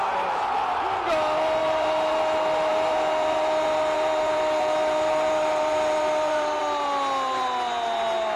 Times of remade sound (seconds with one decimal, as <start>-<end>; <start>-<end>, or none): 1.6-2.2; 2.7-6.6